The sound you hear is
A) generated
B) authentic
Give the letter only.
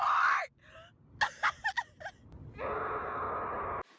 B